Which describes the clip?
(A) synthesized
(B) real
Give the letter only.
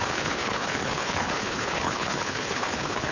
A